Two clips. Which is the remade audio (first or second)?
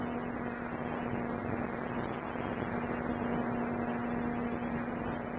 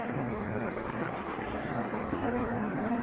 second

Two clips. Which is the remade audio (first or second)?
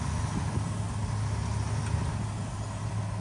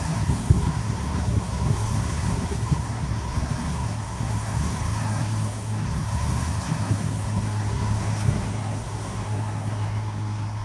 second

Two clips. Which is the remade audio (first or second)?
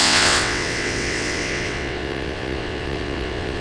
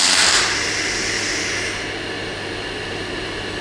first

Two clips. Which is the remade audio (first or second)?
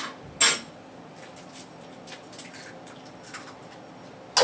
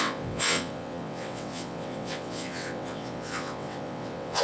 second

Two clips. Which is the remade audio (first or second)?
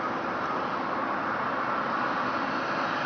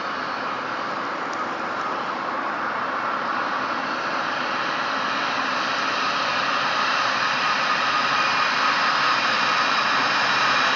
second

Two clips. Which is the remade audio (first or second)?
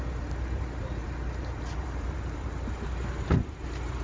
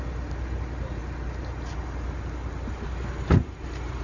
first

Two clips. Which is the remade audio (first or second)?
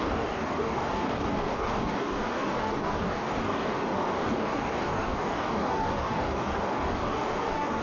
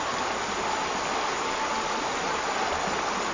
first